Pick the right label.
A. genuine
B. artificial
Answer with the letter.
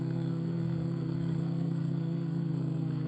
B